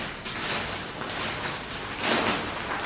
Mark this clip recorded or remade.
recorded